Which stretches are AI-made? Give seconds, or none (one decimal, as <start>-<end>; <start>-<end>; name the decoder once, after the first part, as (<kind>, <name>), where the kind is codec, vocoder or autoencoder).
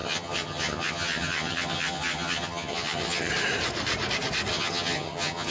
0.0-3.3 (vocoder, HiFi-GAN); 4.5-5.5